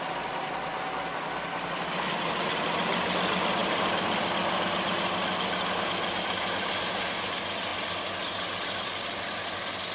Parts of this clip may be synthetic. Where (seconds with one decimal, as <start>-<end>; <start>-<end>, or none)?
none